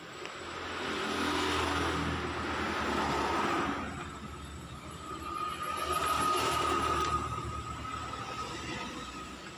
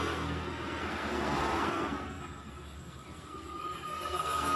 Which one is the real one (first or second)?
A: first